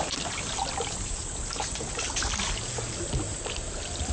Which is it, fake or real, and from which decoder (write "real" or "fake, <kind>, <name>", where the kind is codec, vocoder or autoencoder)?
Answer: real